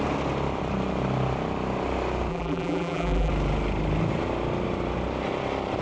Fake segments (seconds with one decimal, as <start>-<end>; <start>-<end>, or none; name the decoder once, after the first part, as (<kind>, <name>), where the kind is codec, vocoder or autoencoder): 2.3-3.3 (vocoder, BigVGAN v2)